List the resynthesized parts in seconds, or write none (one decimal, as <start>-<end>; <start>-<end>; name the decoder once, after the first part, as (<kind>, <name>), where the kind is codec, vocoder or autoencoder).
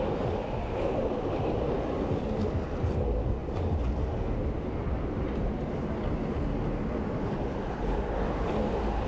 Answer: none